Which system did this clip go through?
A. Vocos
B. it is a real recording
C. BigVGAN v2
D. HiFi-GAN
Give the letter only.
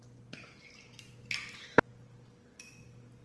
B